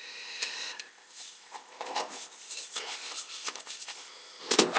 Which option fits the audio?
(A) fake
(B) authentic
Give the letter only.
A